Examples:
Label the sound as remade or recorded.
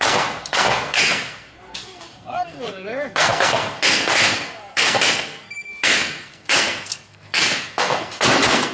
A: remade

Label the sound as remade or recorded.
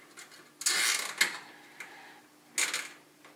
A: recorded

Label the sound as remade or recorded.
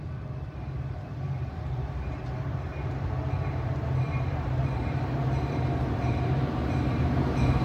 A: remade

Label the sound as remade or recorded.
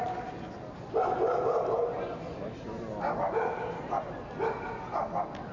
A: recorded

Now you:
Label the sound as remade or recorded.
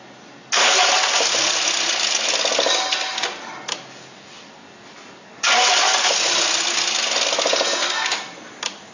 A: recorded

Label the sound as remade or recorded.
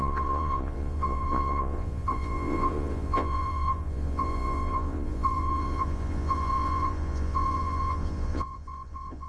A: remade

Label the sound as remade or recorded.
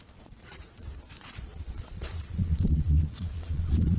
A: remade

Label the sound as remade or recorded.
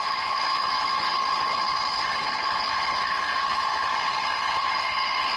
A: remade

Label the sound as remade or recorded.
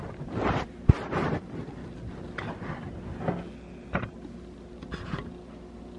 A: recorded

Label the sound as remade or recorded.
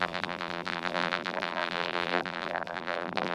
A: remade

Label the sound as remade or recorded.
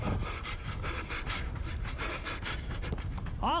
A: remade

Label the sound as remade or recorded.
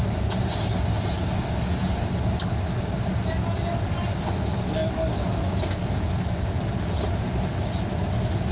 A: recorded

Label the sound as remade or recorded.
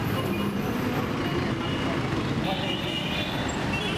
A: recorded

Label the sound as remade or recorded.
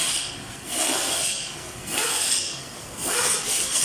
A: remade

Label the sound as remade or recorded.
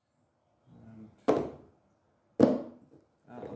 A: recorded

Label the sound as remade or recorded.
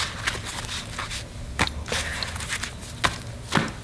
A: recorded